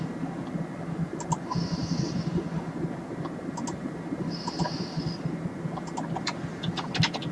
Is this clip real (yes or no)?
yes